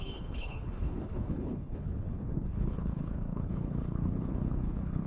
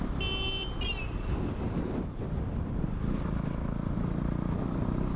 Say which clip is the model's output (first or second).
first